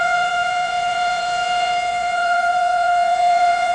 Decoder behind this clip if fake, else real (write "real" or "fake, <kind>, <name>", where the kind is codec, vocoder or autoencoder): fake, vocoder, Vocos